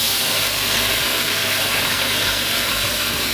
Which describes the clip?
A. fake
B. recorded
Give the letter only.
A